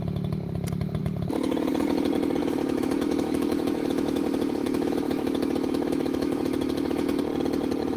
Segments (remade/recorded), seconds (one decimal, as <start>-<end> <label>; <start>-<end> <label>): 0.0-2.4 recorded; 2.4-7.2 remade; 7.2-8.0 recorded

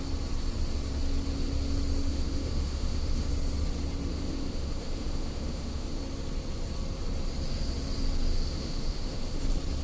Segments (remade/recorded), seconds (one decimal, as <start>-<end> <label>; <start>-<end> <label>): 0.0-2.1 recorded; 2.1-3.3 remade; 3.3-4.1 recorded; 4.1-6.0 remade; 6.0-8.3 recorded; 8.3-9.4 remade; 9.4-9.8 recorded

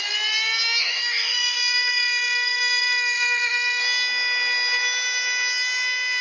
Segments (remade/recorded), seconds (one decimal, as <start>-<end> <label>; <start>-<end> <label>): 0.0-0.8 recorded; 0.8-3.8 remade; 3.8-6.2 recorded

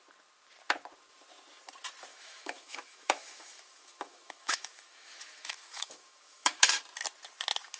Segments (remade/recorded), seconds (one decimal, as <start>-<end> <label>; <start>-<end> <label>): 0.0-2.1 recorded; 2.1-6.8 remade; 6.8-7.8 recorded

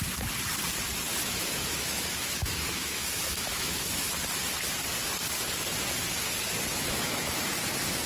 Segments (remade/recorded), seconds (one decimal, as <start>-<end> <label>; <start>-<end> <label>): 0.0-1.1 recorded; 1.1-4.1 remade; 4.1-6.7 recorded; 6.7-7.4 remade; 7.4-8.1 recorded

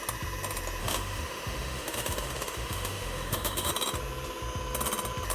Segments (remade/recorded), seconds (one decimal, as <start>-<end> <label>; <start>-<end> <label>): 0.0-0.8 recorded; 0.8-3.7 remade; 3.7-5.3 recorded

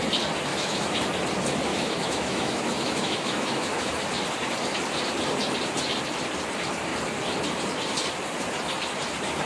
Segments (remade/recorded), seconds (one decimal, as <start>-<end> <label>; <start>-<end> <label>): 0.0-0.5 recorded; 0.5-1.0 remade; 1.0-1.7 recorded; 1.7-3.9 remade; 3.9-9.5 recorded